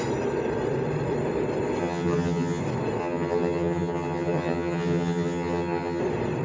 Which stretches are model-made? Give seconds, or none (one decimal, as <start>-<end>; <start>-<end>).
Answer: 1.8-2.6; 3.0-6.0